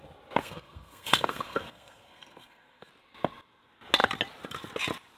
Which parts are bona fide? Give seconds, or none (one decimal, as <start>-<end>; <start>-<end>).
0.0-0.4; 2.9-5.2